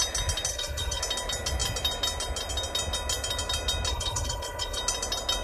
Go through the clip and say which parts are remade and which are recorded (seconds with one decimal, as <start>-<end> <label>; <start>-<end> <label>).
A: 0.0-0.5 recorded; 0.5-1.0 remade; 1.0-3.9 recorded; 3.9-4.8 remade; 4.8-5.4 recorded